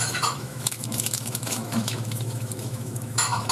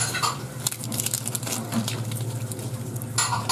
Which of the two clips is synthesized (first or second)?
first